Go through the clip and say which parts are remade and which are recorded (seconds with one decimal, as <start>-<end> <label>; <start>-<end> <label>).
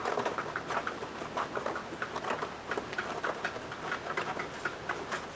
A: 0.0-5.4 recorded